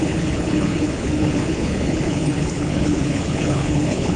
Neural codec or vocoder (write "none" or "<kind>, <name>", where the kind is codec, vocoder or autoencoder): codec, HILCodec